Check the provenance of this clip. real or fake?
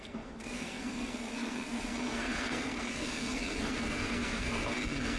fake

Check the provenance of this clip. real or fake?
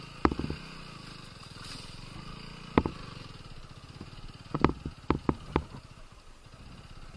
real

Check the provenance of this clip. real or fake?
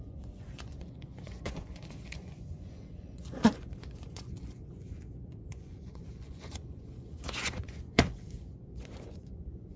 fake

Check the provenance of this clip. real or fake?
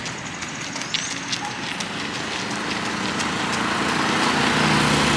real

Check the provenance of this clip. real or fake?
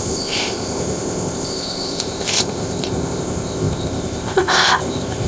fake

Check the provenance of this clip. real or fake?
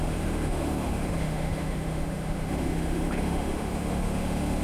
fake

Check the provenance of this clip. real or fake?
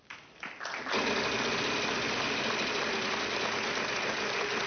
real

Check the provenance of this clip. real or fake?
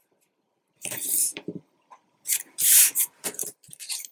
fake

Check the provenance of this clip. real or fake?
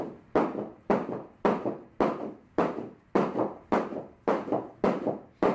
real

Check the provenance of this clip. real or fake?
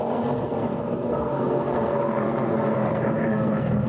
fake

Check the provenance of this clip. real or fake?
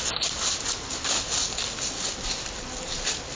real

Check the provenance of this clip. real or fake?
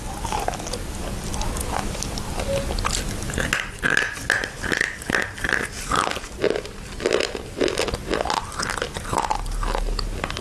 real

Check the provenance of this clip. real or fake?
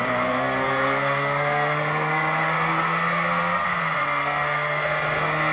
fake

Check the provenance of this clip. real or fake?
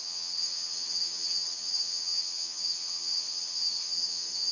fake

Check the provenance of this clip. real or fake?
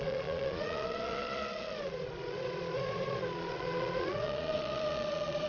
fake